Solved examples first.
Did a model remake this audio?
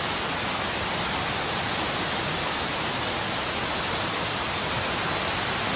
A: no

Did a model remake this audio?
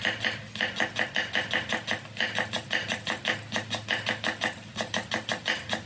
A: no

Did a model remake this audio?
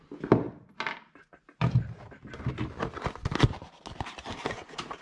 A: no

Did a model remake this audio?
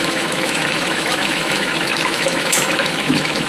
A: yes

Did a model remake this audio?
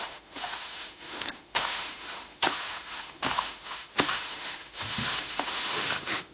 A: yes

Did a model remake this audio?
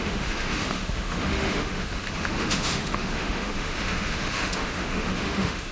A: yes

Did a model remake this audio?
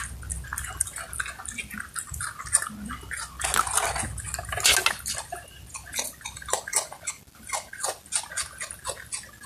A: no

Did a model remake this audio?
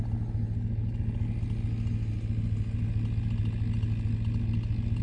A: no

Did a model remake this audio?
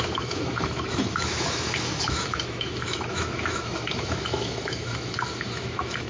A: yes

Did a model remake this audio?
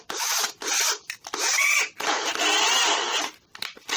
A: no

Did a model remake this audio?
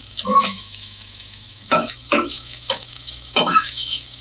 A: yes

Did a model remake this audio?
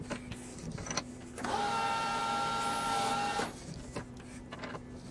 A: no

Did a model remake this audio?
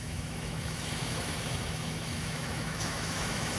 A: yes